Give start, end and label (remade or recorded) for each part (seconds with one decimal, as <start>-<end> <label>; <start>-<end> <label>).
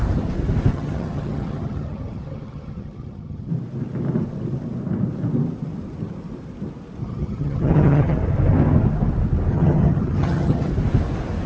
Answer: 0.0-0.7 recorded; 0.7-3.5 remade; 3.5-7.0 recorded; 7.0-8.2 remade; 8.2-9.5 recorded; 9.5-10.7 remade; 10.7-11.5 recorded